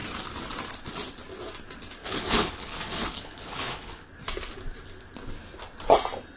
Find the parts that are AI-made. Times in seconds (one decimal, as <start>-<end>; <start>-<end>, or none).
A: 2.0-4.1